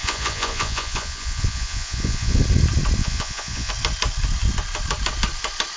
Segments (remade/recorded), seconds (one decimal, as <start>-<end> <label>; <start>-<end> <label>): 0.0-2.4 remade; 2.4-3.0 recorded; 3.0-3.7 remade; 3.7-5.8 recorded